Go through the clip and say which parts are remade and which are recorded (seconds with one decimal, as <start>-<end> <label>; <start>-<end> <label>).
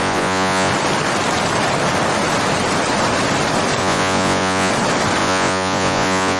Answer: 0.0-0.7 remade; 0.7-3.8 recorded; 3.8-4.7 remade; 4.7-5.2 recorded; 5.2-6.4 remade